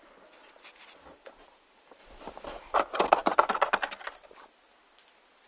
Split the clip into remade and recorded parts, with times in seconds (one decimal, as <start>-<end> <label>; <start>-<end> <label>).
0.0-2.0 recorded; 2.0-2.8 remade; 2.8-5.5 recorded